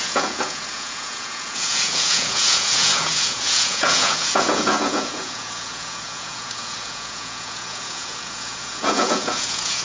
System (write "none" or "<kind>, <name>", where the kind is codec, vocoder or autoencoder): vocoder, Vocos